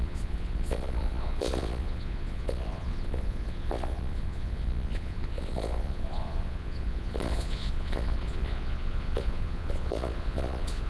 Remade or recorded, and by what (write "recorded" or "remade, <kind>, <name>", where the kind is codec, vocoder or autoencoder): remade, vocoder, Vocos